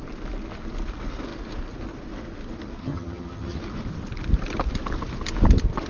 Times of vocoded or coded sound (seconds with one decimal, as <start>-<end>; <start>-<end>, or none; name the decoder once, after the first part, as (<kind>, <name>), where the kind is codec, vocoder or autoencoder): 2.8-3.6 (vocoder, HiFi-GAN)